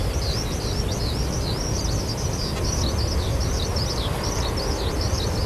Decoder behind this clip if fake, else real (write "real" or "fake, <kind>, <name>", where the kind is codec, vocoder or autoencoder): real